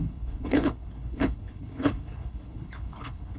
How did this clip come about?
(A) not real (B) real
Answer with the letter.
A